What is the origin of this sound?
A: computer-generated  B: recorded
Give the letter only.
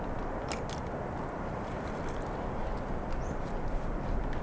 B